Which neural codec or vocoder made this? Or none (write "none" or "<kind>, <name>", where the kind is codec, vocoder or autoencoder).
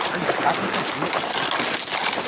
none